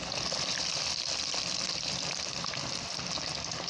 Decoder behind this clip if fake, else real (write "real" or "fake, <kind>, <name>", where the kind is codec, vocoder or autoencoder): real